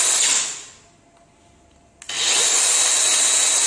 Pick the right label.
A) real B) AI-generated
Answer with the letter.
A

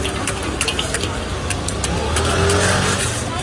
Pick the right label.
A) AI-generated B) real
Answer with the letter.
B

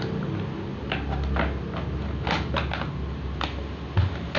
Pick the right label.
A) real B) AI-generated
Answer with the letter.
A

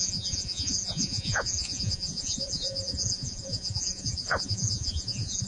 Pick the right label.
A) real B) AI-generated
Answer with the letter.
B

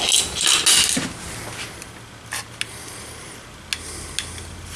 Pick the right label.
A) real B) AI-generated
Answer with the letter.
A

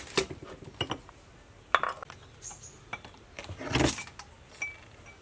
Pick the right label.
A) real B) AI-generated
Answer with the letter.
A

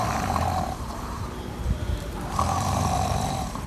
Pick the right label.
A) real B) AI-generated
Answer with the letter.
B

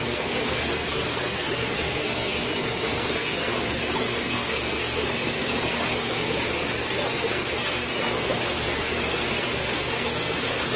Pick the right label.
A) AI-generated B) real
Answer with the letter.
A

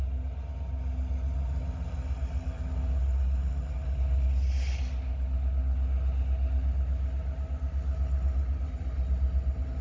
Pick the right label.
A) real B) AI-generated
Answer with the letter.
A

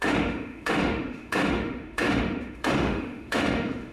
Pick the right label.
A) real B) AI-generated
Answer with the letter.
B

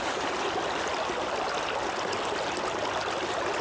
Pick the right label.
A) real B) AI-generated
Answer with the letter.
A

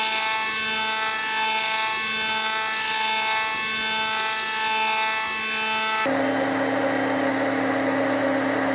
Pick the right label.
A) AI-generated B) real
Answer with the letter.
B